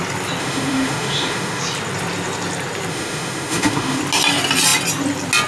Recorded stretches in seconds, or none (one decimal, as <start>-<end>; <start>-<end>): 0.0-0.4; 1.6-2.9; 4.0-5.5